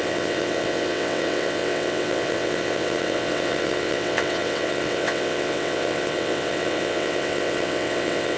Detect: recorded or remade remade